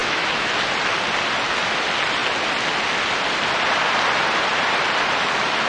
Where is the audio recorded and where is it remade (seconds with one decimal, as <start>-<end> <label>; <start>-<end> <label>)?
0.0-0.5 remade; 0.5-5.7 recorded